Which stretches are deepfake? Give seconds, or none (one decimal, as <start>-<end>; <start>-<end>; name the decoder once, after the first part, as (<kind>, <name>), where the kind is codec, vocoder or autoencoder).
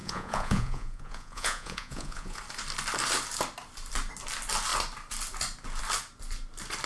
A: 0.0-2.4 (vocoder, Vocos)